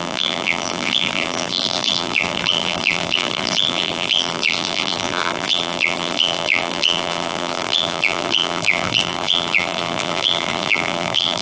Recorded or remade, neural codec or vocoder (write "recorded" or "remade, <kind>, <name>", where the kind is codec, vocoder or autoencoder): remade, vocoder, BigVGAN v2